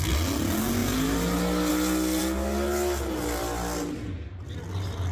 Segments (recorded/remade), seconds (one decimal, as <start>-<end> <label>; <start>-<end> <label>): 0.0-5.1 recorded